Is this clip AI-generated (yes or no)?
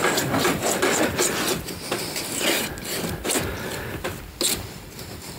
no